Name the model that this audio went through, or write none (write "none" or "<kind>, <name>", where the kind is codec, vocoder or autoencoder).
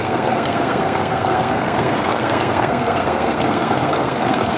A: codec, SNAC